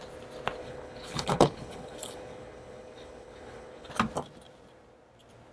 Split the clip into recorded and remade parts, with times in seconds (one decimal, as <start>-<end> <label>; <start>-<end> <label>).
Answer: 0.0-0.6 recorded; 0.6-3.9 remade; 3.9-5.5 recorded